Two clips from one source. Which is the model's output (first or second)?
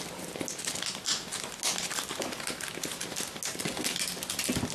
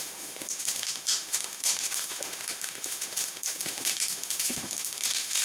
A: second